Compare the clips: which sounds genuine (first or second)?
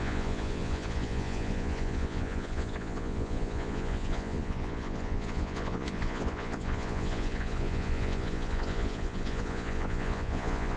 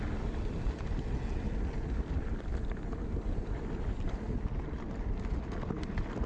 second